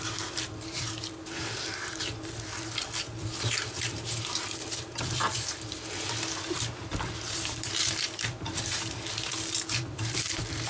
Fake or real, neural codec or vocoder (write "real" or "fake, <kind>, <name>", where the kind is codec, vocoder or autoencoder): fake, vocoder, BigVGAN v2